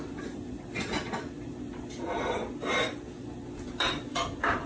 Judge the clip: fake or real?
real